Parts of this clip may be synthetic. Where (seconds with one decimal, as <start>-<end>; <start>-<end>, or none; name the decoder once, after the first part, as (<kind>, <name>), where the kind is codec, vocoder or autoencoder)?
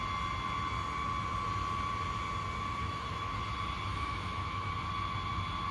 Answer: 2.8-3.4 (autoencoder, DAC-VAE); 3.9-4.7